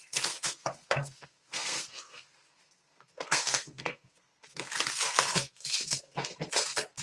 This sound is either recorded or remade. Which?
remade